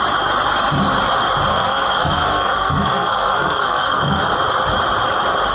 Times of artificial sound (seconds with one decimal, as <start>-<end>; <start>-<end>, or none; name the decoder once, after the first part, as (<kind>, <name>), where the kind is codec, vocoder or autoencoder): 1.5-4.3 (codec, SNAC)